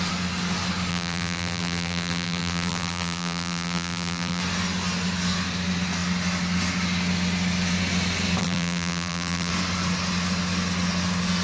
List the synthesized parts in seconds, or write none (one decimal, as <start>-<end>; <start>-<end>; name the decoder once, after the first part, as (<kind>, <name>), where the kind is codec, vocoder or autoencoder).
0.9-4.4 (vocoder, BigVGAN v2); 8.4-9.5